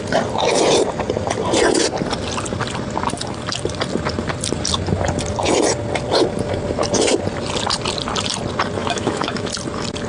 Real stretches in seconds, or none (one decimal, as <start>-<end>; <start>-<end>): 0.0-8.8; 9.5-10.1